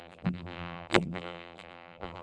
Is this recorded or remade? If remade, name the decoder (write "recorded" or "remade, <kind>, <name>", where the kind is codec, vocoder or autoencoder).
remade, vocoder, BigVGAN v2